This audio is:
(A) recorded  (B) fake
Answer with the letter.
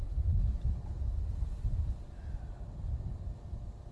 A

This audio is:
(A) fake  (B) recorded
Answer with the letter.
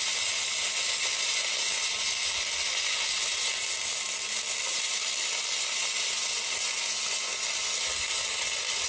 B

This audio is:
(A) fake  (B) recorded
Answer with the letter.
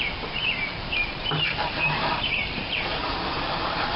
A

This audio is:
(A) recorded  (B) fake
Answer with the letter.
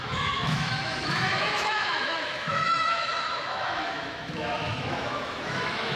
B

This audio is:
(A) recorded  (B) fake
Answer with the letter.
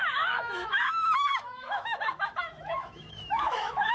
B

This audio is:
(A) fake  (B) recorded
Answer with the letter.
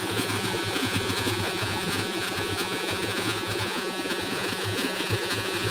A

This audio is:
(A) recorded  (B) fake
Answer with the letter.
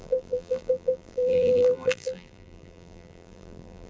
B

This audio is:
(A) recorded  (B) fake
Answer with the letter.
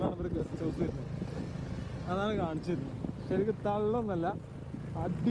A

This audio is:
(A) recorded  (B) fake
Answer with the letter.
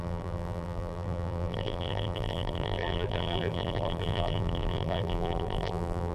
B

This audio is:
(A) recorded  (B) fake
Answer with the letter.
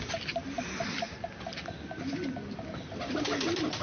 A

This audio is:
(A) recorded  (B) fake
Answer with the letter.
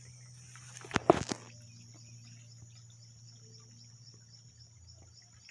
A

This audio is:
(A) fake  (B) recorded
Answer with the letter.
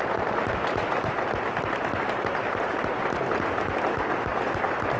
B